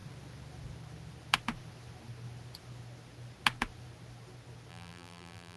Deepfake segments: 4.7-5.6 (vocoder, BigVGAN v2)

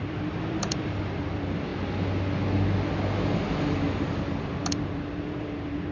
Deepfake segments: 0.0-1.7 (vocoder, BigVGAN v2); 4.7-5.9

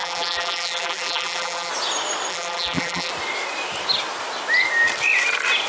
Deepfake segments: 0.0-1.7 (vocoder, BigVGAN v2); 2.3-3.1

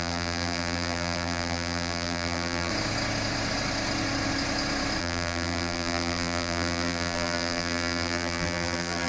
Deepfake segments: 0.0-2.7 (vocoder, BigVGAN v2); 5.0-9.1